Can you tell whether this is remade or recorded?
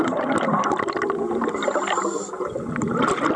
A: recorded